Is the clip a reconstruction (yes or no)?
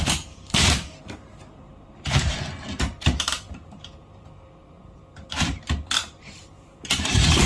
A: yes